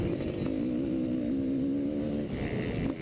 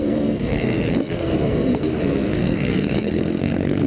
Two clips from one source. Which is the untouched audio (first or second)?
first